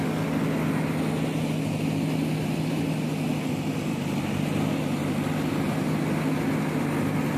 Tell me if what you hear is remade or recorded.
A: recorded